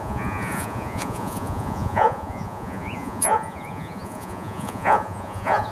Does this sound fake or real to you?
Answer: fake